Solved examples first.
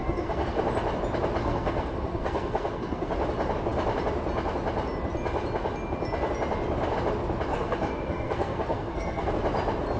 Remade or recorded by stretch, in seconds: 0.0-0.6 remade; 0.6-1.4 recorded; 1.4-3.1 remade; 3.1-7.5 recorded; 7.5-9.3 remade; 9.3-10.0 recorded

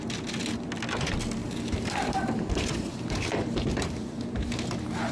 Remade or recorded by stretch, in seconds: 0.0-1.4 recorded; 1.4-4.5 remade; 4.5-5.1 recorded

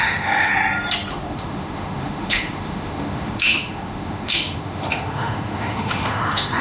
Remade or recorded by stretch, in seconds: 0.0-0.5 remade; 0.5-1.1 recorded; 1.1-6.6 remade

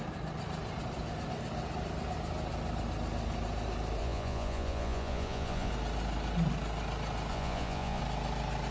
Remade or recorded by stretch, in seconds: 0.0-4.0 recorded; 4.0-5.7 remade; 5.7-7.3 recorded; 7.3-8.0 remade; 8.0-8.7 recorded

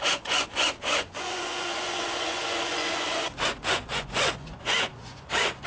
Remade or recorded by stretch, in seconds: 0.0-5.7 remade